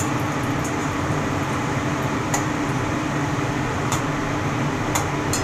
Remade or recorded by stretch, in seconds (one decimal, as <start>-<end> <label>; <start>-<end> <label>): 0.0-0.8 recorded; 0.8-4.0 remade; 4.0-5.4 recorded